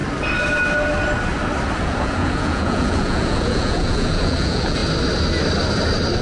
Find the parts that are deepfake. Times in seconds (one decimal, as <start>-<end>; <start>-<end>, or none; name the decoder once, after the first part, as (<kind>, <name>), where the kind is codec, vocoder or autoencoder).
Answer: 1.8-4.8 (vocoder, Vocos)